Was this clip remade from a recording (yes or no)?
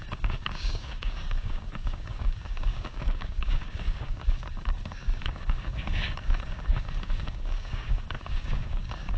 yes